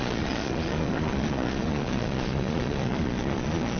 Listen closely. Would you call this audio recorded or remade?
remade